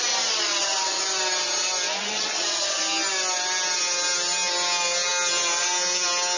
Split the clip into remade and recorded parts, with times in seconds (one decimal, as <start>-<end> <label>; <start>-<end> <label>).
0.0-0.5 recorded; 0.5-1.0 remade; 1.0-2.0 recorded; 2.0-2.8 remade; 2.8-6.4 recorded